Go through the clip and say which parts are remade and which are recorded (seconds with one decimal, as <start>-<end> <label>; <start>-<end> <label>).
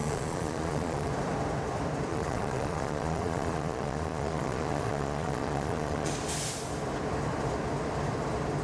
0.0-1.1 remade; 1.1-2.1 recorded; 2.1-6.1 remade; 6.1-8.6 recorded